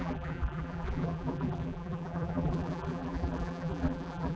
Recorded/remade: remade